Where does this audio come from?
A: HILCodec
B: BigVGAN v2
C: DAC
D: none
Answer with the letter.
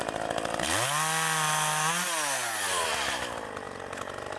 D